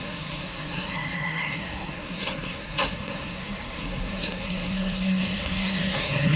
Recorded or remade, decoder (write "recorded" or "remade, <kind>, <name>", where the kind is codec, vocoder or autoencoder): remade, codec, SNAC